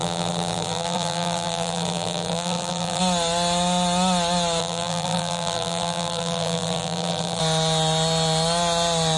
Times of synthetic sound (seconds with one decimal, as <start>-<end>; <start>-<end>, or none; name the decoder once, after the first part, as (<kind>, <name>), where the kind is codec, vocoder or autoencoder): 0.0-3.0 (vocoder, BigVGAN v2); 4.6-7.4